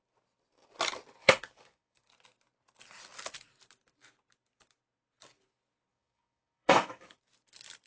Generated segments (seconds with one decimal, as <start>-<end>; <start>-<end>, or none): 1.2-2.1; 5.9-7.2